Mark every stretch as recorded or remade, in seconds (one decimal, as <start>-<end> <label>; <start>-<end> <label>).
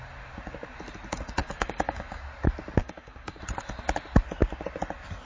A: 0.0-1.4 recorded; 1.4-2.2 remade; 2.2-2.8 recorded; 2.8-3.4 remade; 3.4-5.3 recorded